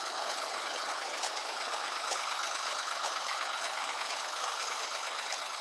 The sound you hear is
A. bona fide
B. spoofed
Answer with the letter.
B